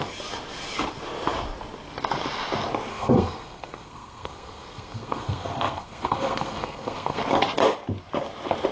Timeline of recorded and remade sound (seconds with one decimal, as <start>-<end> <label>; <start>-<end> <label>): 0.0-2.9 recorded; 2.9-7.2 remade; 7.2-8.7 recorded